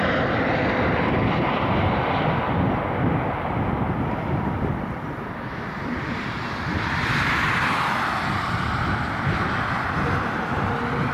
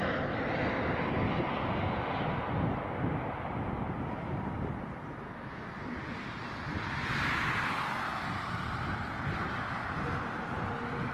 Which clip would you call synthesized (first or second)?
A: first